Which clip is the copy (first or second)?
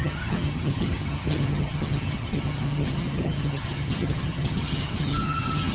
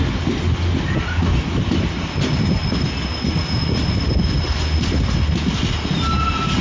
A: first